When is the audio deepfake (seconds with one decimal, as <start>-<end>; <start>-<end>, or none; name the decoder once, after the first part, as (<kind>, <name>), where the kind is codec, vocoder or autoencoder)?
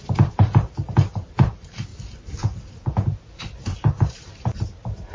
0.0-1.9 (vocoder, BigVGAN v2); 3.2-5.1